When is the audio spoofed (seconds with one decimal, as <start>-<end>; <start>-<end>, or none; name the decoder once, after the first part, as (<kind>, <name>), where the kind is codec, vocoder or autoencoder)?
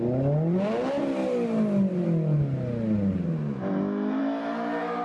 none